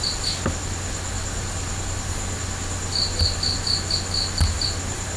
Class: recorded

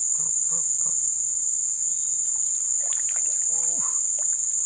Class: remade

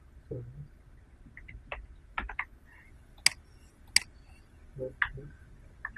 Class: recorded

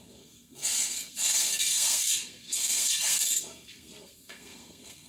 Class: remade